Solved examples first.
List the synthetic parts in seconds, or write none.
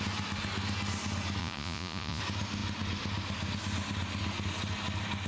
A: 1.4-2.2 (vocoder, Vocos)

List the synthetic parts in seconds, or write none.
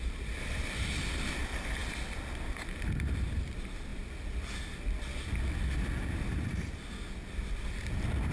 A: none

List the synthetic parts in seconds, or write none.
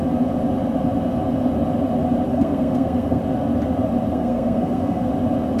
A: 2.3-3.2 (codec, SNAC); 4.1-5.1